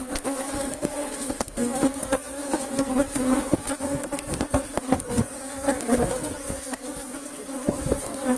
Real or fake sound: fake